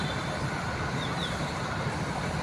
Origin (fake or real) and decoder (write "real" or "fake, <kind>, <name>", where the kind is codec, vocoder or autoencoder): real